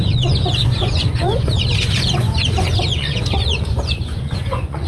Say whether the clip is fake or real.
fake